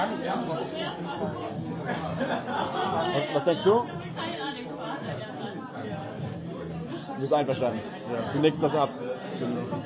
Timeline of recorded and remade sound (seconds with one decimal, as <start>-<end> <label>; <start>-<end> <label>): 0.0-9.9 recorded